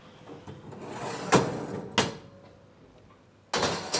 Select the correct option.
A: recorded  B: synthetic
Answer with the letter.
A